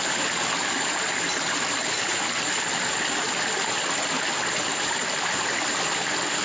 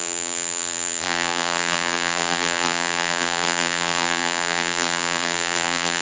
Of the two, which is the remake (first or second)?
second